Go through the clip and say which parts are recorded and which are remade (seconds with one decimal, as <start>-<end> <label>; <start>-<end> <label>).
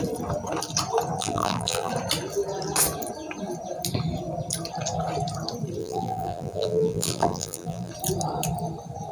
0.0-1.2 recorded; 1.2-1.9 remade; 1.9-5.8 recorded; 5.8-7.9 remade; 7.9-9.1 recorded